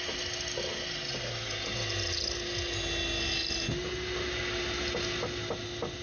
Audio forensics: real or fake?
real